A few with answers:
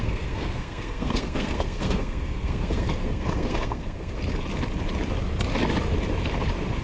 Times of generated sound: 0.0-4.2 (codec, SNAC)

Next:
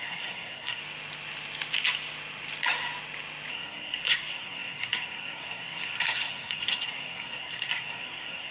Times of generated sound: 0.0-0.8 (codec, SNAC); 3.5-8.5

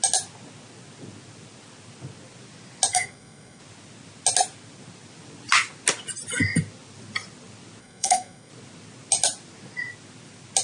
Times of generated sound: 2.9-3.6 (codec, SNAC); 7.8-8.5

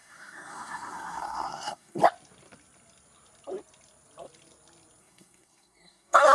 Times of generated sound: 0.0-2.0 (codec, SNAC); 5.0-6.3

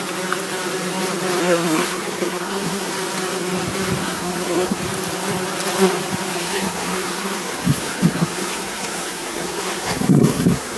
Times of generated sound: 1.4-2.9 (codec, SNAC); 4.0-4.8; 6.4-10.8

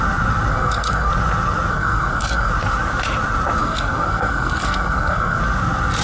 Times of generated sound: 0.5-1.1 (codec, SNAC); 1.7-2.5; 3.6-5.4